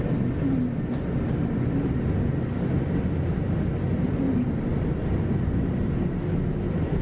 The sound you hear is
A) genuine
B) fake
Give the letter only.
A